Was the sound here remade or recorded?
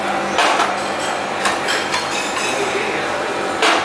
recorded